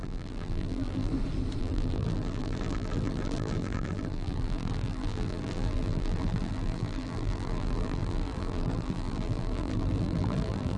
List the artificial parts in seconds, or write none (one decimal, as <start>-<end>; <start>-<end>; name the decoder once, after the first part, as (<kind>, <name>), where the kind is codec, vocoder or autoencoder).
0.0-1.1 (vocoder, BigVGAN v2); 1.6-10.8